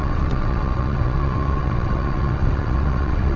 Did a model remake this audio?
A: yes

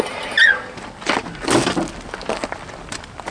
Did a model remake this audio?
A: no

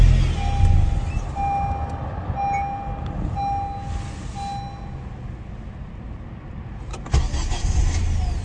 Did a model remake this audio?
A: no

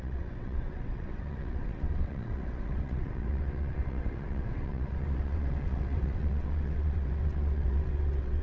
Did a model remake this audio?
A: yes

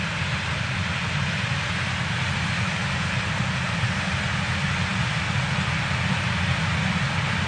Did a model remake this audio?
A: no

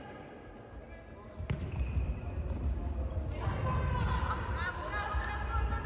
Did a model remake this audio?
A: no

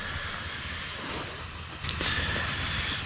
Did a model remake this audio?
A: no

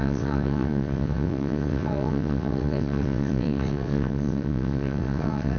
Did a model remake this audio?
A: yes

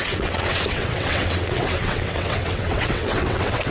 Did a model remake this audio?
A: yes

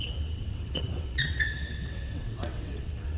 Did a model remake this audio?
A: yes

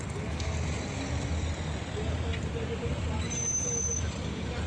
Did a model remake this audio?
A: no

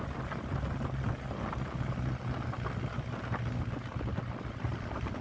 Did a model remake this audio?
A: no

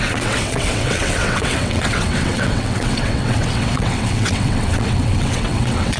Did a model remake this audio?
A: yes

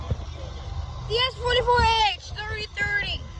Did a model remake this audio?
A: no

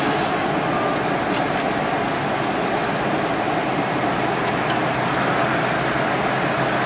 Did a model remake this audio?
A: no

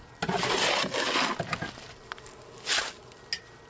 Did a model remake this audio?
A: no